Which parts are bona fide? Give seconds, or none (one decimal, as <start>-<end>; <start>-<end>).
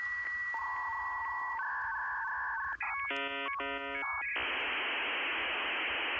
0.0-6.2